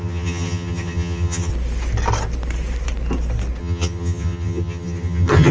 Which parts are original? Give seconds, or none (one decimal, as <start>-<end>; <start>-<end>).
1.5-3.6